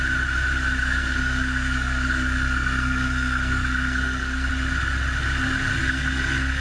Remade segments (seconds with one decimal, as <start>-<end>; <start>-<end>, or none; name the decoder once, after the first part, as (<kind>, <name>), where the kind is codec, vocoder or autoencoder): 0.8-4.5 (codec, SNAC); 5.8-6.6

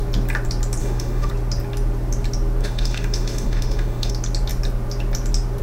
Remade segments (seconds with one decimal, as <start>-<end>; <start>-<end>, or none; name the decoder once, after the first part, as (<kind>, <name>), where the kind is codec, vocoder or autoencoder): 0.8-1.3 (autoencoder, DAC-VAE); 2.6-4.1

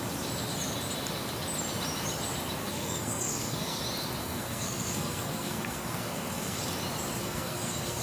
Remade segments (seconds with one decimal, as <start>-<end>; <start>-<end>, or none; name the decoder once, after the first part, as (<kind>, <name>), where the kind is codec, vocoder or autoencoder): 2.6-3.8 (codec, SNAC); 4.2-6.6; 7.2-8.0